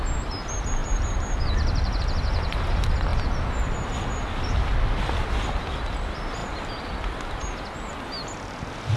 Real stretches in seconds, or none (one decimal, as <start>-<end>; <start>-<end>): 0.0-0.8; 2.0-9.0